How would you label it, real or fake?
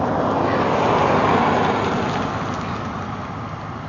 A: real